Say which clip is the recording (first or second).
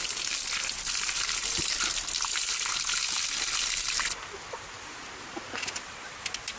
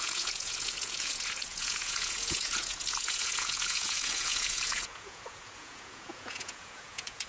first